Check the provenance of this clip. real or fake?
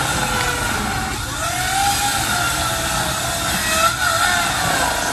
real